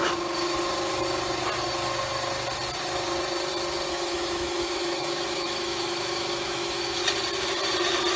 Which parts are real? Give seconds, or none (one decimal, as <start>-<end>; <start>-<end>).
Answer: 0.0-3.9; 7.0-8.2